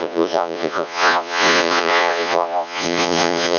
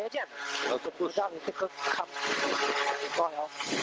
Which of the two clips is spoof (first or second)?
first